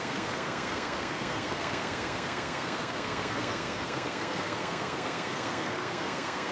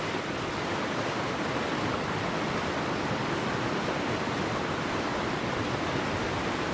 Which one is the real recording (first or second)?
second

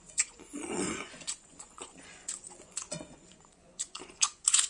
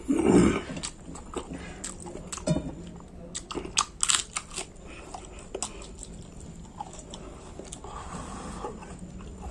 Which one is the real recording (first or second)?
second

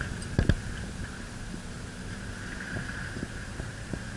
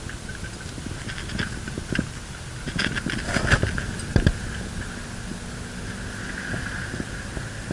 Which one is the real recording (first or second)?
second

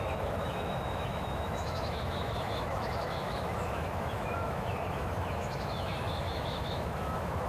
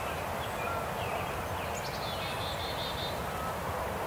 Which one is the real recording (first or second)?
second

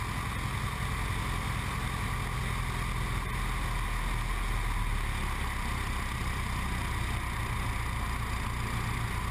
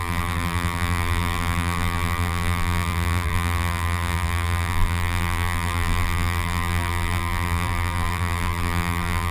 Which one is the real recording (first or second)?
first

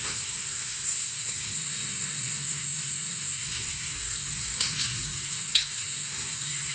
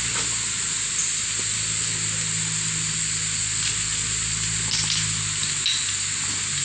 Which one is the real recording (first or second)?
second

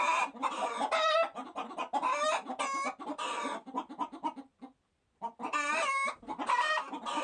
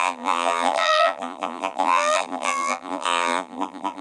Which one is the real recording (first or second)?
first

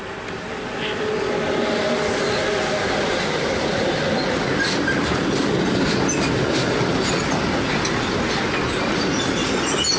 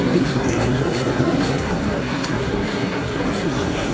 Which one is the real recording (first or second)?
first